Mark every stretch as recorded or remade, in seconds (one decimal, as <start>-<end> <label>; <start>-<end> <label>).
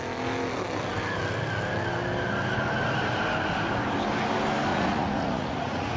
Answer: 0.0-4.7 recorded; 4.7-6.0 remade